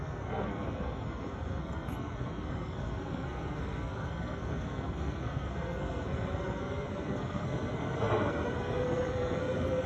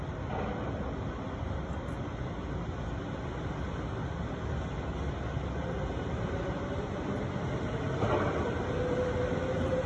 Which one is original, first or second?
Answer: second